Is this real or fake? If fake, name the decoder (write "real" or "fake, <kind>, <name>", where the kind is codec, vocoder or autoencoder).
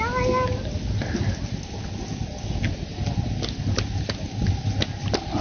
real